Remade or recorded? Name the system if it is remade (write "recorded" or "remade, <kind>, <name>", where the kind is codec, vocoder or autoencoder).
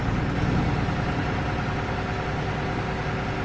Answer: recorded